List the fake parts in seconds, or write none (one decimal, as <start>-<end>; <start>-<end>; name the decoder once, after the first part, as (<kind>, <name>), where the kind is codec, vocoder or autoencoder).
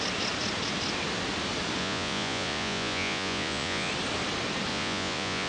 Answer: 1.8-3.9 (vocoder, Vocos); 4.7-5.5